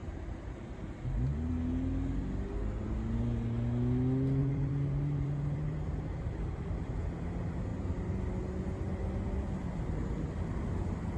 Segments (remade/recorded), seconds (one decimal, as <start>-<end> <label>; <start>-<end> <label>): 0.0-1.5 remade; 1.5-4.4 recorded; 4.4-7.0 remade; 7.0-7.7 recorded; 7.7-8.2 remade; 8.2-11.2 recorded